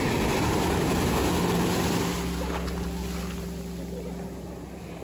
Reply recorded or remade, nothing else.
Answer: recorded